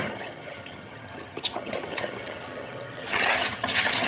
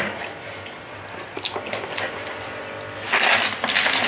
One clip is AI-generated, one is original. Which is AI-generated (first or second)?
first